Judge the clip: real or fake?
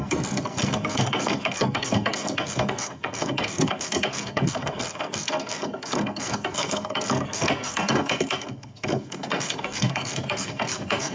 fake